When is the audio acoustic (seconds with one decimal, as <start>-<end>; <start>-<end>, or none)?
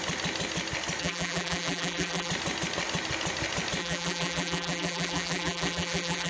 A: 0.0-1.0; 2.3-3.8